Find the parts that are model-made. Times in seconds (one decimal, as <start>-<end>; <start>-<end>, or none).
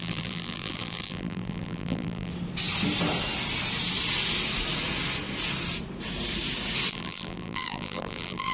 0.0-2.3; 6.9-8.5